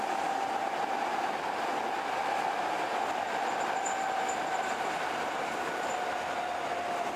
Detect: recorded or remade recorded